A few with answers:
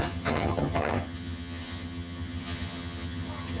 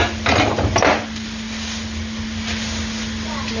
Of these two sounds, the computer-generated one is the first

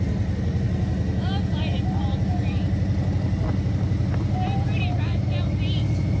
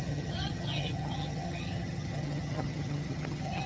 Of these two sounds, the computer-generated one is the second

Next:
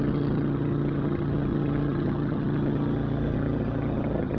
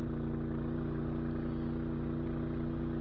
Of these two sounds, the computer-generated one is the first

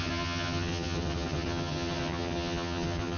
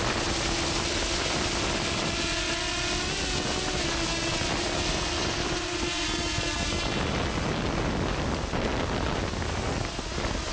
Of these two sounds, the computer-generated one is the first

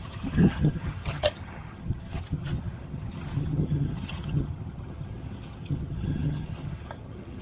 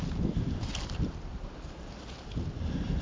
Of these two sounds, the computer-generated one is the first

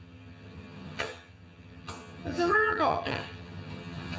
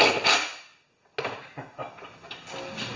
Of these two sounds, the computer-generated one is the first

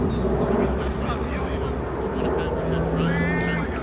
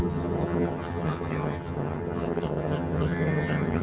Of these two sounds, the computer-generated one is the second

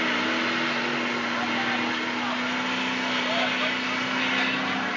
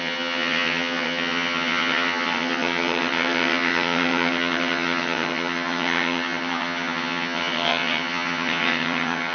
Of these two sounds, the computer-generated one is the second